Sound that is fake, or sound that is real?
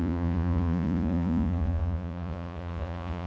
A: fake